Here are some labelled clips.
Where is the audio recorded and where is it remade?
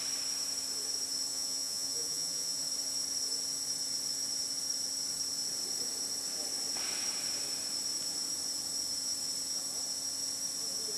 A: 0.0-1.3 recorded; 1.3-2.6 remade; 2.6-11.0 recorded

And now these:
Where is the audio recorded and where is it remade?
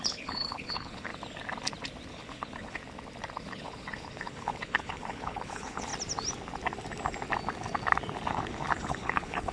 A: 0.0-1.1 remade; 1.1-2.1 recorded; 2.1-2.8 remade; 2.8-3.4 recorded; 3.4-5.9 remade; 5.9-8.3 recorded; 8.3-9.5 remade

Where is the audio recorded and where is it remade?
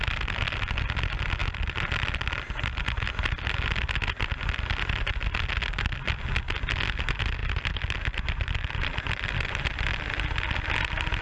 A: 0.0-1.4 recorded; 1.4-3.1 remade; 3.1-7.4 recorded; 7.4-9.5 remade; 9.5-11.2 recorded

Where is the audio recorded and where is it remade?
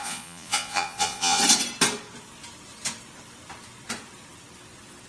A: 0.0-1.4 remade; 1.4-5.1 recorded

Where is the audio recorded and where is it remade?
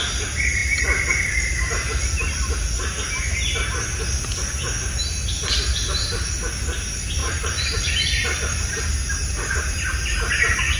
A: 0.0-7.2 recorded; 7.2-7.9 remade; 7.9-10.8 recorded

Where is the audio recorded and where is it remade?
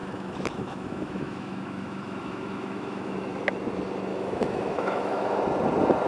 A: 0.0-3.3 remade; 3.3-4.1 recorded; 4.1-5.4 remade; 5.4-6.1 recorded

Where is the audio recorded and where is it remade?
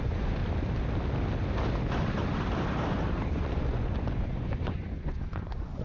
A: 0.0-0.4 remade; 0.4-3.3 recorded; 3.3-5.8 remade